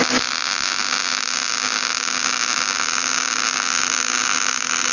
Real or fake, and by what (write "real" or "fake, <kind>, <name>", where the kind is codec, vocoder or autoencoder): real